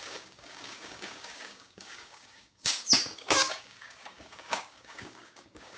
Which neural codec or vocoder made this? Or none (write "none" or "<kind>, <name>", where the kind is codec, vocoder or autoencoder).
codec, DAC